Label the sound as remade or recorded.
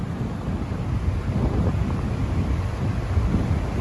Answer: recorded